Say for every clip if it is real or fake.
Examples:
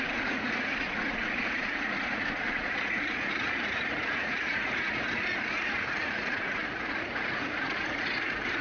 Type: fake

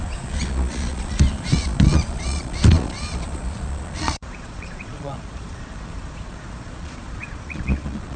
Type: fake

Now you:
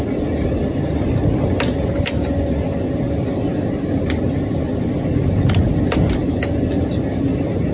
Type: real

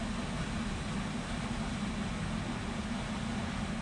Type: real